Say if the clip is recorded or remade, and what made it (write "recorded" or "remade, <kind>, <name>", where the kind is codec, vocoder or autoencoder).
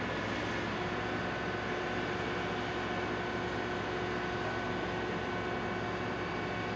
recorded